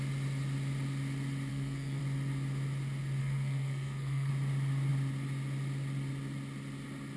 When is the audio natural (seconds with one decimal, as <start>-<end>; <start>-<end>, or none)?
0.0-1.5; 2.0-3.2; 4.3-7.2